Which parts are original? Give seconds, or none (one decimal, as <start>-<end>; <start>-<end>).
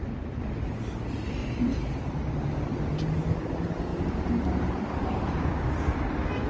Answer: 0.0-1.4; 2.4-3.9; 5.5-6.5